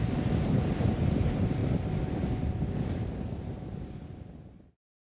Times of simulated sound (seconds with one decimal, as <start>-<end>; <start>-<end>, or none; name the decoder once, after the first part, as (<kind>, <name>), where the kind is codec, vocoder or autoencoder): none